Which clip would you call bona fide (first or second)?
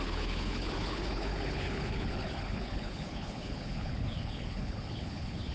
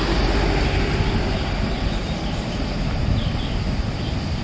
second